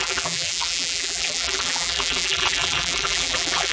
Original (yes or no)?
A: no